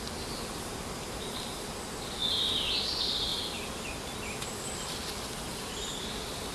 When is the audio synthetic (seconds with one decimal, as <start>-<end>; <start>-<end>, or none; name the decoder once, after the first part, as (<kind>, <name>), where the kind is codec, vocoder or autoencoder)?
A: none